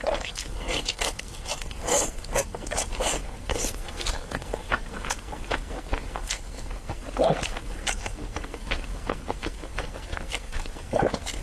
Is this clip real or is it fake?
fake